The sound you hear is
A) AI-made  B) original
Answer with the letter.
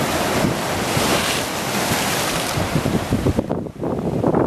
B